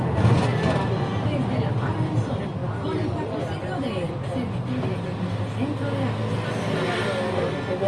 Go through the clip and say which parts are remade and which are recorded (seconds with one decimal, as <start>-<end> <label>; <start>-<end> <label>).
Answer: 0.0-7.9 recorded